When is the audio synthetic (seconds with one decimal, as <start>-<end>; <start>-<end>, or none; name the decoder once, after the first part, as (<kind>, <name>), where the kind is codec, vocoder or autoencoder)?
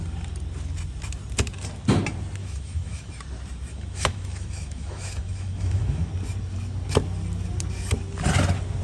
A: 2.4-3.1 (autoencoder, DAC-VAE); 3.7-6.1